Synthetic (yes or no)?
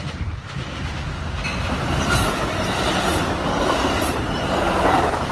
no